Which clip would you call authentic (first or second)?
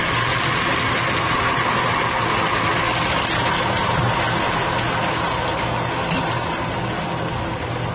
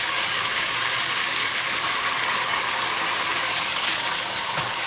first